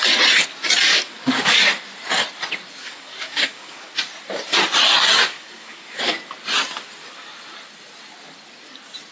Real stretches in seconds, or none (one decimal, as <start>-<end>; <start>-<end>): 0.0-0.9; 1.6-2.8; 3.9-5.2; 6.1-9.1